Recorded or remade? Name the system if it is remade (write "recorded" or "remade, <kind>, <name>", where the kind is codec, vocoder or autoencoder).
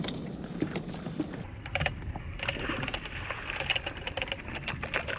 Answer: recorded